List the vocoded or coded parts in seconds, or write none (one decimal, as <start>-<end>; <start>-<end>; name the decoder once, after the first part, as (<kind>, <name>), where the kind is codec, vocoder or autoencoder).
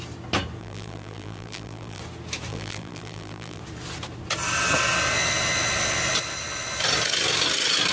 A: 0.6-2.0 (vocoder, BigVGAN v2); 2.5-3.6